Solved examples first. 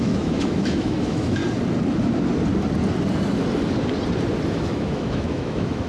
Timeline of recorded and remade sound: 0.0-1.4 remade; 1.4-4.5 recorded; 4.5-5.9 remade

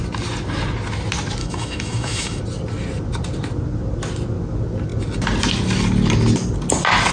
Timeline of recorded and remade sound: 0.0-1.4 recorded; 1.4-2.4 remade; 2.4-7.1 recorded

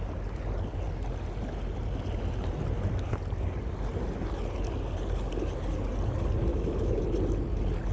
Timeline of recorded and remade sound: 0.0-6.5 recorded; 6.5-7.0 remade; 7.0-7.9 recorded